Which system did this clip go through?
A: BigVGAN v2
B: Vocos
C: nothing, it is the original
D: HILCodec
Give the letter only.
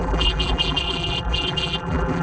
A